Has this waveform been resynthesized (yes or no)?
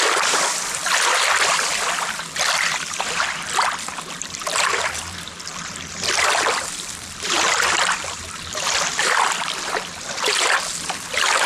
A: yes